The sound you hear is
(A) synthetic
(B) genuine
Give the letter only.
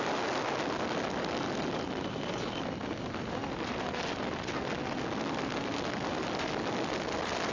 B